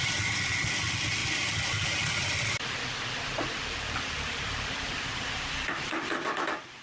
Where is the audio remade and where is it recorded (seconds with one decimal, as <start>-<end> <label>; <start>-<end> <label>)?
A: 0.0-6.8 recorded